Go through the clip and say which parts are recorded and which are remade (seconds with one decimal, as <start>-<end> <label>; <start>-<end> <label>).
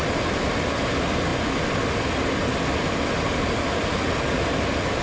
0.0-5.0 recorded